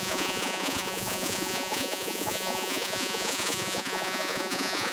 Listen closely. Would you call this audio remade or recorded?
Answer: remade